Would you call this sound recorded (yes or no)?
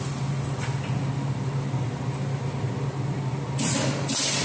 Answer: yes